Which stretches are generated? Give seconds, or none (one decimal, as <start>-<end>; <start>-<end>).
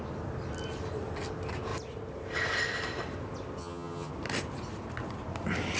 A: 3.6-4.1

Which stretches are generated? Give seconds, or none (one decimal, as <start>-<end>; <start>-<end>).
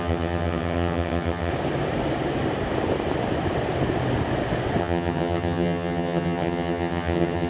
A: 0.0-1.5; 4.8-7.5